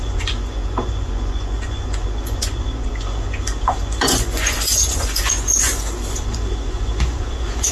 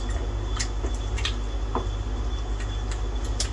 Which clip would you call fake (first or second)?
first